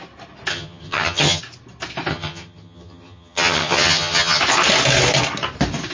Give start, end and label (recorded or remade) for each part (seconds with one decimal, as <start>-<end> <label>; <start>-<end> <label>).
0.0-0.5 recorded; 0.5-1.4 remade; 1.4-2.1 recorded; 2.1-4.4 remade; 4.4-5.9 recorded